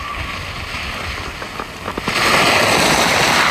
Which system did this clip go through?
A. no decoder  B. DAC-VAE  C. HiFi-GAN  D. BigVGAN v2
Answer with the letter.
A